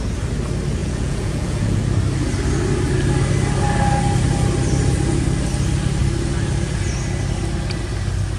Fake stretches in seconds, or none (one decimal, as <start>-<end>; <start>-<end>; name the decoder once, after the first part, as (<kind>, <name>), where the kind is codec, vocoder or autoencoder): 0.8-1.8 (vocoder, Vocos)